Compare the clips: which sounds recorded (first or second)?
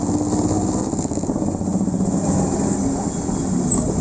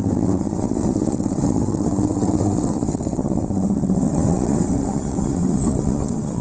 first